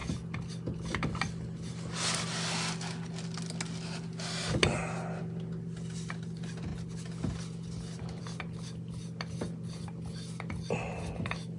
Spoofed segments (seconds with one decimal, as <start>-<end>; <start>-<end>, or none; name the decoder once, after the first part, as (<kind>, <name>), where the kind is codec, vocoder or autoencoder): none